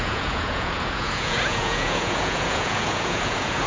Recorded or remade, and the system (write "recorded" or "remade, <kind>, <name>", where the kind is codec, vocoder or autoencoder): remade, vocoder, Vocos